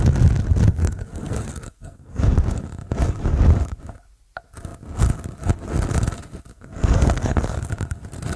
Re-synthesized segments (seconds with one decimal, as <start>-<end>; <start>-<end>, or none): 0.7-2.2; 6.5-7.6